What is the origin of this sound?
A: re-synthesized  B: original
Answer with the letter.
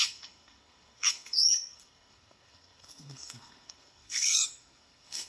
A